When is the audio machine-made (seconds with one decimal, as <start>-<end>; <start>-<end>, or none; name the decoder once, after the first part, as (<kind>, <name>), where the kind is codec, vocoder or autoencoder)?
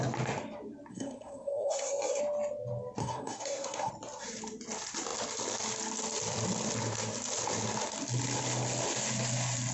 0.9-2.2 (codec, SNAC); 3.0-3.9